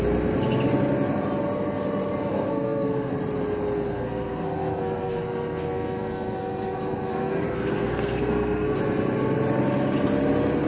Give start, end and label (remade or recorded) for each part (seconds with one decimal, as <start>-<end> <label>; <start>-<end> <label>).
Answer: 0.0-2.3 recorded; 2.3-3.1 remade; 3.1-3.9 recorded; 3.9-8.8 remade; 8.8-10.7 recorded